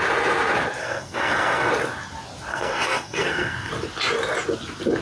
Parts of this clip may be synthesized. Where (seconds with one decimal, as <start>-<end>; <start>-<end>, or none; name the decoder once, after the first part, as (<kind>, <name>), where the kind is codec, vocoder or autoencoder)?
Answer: 0.8-1.7 (codec, SNAC); 2.5-3.7